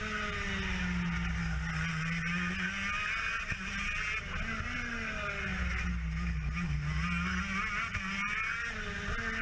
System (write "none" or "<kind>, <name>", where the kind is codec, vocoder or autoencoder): none